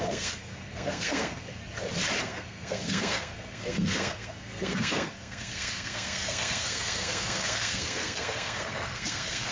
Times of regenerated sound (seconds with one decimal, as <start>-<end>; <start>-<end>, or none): 0.0-1.6; 2.2-9.5